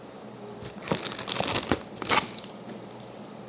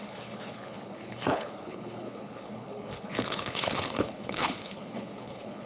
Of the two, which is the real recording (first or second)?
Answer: first